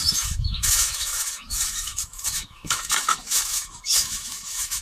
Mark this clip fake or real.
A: fake